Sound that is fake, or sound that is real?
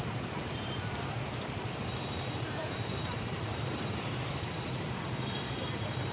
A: fake